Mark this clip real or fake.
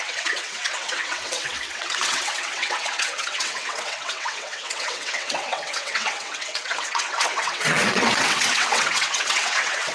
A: fake